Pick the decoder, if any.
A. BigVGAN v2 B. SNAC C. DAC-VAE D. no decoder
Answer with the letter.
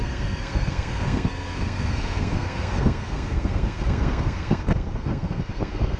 B